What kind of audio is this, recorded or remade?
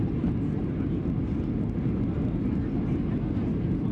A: recorded